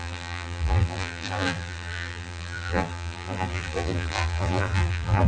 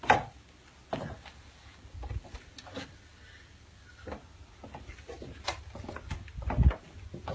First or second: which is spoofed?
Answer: first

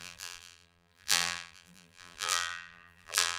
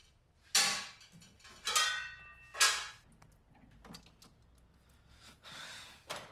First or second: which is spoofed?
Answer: first